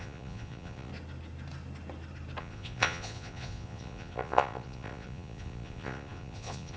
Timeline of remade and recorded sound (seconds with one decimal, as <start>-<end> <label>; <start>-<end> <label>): 0.0-0.9 remade; 0.9-2.4 recorded; 2.4-6.8 remade

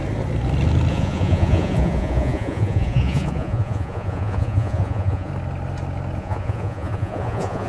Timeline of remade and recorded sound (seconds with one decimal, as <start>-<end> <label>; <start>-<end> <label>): 0.0-0.9 recorded; 0.9-5.3 remade; 5.3-6.2 recorded; 6.2-7.7 remade